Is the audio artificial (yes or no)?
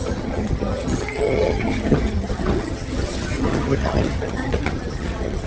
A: yes